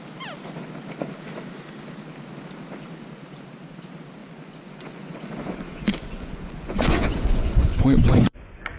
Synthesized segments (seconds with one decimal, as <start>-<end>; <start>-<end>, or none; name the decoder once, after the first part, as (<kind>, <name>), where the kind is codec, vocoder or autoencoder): 4.2-8.8 (vocoder, Vocos)